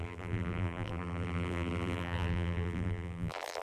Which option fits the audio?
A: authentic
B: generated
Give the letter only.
B